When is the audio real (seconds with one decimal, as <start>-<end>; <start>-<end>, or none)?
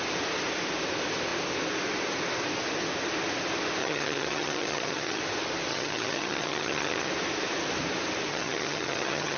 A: 0.0-3.8; 5.2-5.7; 7.1-8.3